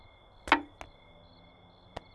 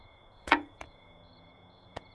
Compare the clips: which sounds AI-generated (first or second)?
second